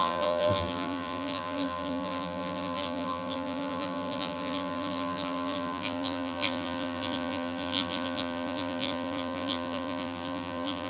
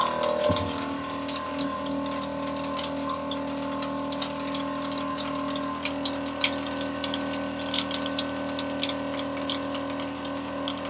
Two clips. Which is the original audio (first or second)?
second